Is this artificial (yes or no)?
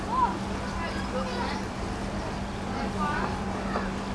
no